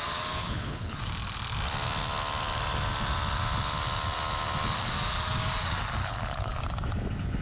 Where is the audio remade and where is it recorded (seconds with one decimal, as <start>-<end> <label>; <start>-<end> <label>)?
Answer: 0.0-0.4 recorded; 0.4-1.0 remade; 1.0-6.0 recorded; 6.0-6.6 remade; 6.6-7.4 recorded